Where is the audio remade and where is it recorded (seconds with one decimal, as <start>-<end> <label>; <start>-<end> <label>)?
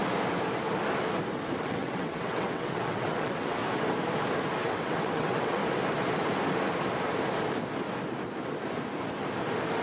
0.0-1.6 recorded; 1.6-3.6 remade; 3.6-4.6 recorded; 4.6-5.6 remade; 5.6-9.8 recorded